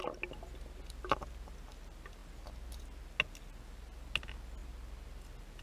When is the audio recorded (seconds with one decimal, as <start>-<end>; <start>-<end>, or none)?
0.0-5.6